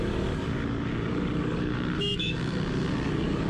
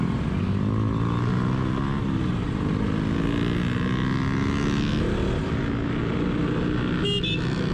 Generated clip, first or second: first